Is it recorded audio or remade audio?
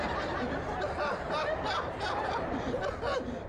recorded